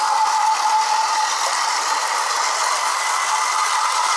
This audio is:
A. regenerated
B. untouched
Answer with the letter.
B